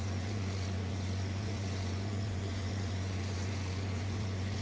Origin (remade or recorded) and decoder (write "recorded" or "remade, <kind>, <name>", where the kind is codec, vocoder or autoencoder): remade, vocoder, Vocos